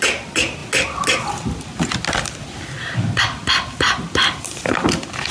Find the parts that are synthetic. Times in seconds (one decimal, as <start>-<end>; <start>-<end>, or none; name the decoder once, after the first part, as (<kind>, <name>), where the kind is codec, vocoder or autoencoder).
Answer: none